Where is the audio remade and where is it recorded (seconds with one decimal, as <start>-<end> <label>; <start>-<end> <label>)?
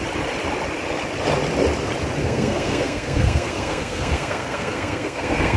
0.0-2.2 recorded; 2.2-5.6 remade